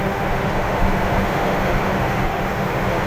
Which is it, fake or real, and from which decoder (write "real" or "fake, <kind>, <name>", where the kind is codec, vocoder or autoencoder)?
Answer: fake, autoencoder, DAC-VAE